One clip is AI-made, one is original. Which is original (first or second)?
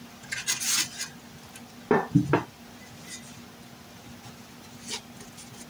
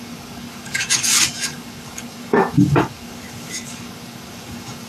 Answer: first